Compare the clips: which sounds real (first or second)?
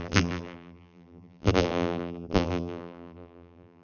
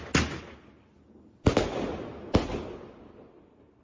second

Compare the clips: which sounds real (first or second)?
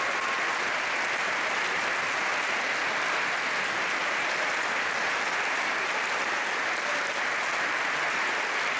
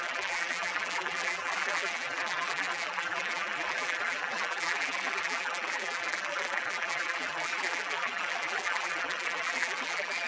first